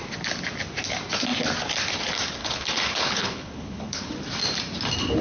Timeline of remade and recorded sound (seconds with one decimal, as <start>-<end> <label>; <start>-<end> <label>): 0.0-2.4 recorded; 2.4-4.1 remade; 4.1-5.2 recorded